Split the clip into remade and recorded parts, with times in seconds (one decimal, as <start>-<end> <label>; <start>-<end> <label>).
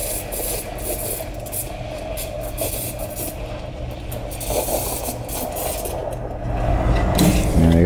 0.0-7.9 recorded